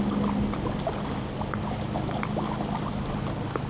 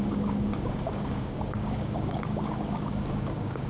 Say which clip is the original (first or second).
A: first